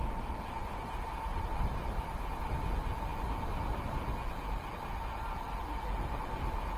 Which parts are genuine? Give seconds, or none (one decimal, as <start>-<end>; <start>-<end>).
0.0-0.6; 2.5-6.8